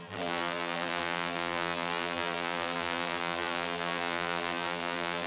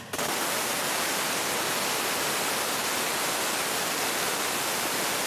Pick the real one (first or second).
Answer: second